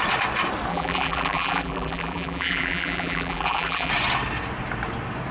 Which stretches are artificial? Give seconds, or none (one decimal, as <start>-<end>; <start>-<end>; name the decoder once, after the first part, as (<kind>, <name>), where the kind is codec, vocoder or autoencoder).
0.7-3.9 (vocoder, BigVGAN v2)

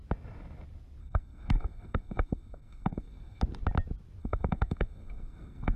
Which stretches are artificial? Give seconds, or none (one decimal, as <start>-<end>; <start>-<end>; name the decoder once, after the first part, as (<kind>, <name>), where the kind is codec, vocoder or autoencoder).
1.0-3.4 (codec, SNAC); 4.2-5.8

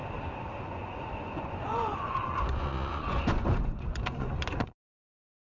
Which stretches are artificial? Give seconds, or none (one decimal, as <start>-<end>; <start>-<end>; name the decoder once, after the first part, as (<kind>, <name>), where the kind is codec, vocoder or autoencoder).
0.6-5.5 (vocoder, Vocos)

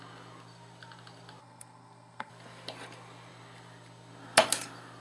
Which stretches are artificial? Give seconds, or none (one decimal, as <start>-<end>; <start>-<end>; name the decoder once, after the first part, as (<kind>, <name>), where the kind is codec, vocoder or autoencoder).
1.4-2.3 (codec, SNAC)

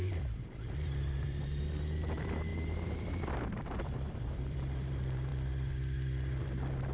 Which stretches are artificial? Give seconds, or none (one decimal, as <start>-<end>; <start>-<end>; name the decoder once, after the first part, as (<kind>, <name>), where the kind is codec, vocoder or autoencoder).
0.0-5.3 (vocoder, BigVGAN v2); 6.4-6.9